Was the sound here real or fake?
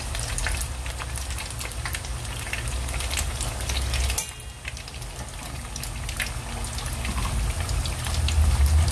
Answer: real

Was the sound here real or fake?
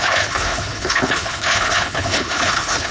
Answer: fake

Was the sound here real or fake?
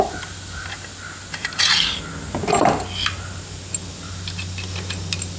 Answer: real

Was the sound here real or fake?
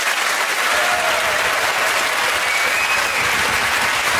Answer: real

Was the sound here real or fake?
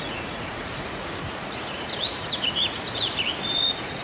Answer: fake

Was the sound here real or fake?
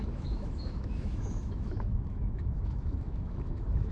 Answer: fake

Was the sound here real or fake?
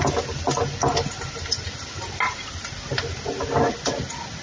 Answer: real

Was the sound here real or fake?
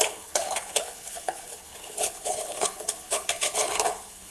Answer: fake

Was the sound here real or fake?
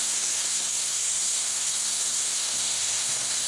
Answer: fake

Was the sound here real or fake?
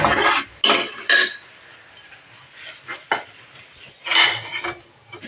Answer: real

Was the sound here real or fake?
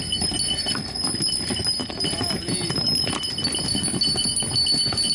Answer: real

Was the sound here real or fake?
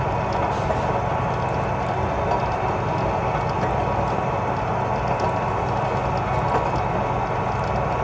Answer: real